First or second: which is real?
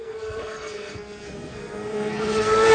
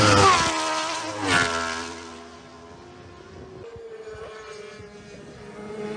second